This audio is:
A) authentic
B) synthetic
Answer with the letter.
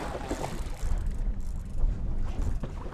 A